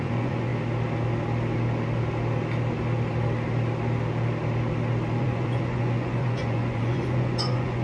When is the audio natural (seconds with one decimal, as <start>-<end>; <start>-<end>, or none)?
0.5-5.2